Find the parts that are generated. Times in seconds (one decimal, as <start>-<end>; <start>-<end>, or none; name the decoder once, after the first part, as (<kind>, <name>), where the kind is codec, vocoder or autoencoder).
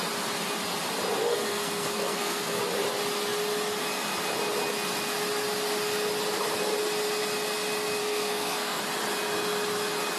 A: 1.2-2.6 (codec, SNAC); 8.0-8.8